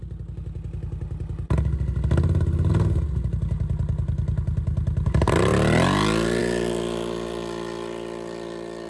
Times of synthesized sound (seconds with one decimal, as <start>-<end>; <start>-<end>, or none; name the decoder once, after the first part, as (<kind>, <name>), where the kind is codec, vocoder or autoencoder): none